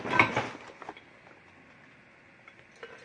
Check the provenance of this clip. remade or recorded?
recorded